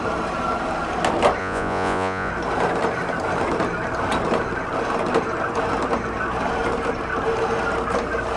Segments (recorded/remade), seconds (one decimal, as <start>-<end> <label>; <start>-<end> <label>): 0.0-1.4 recorded; 1.4-2.3 remade; 2.3-8.4 recorded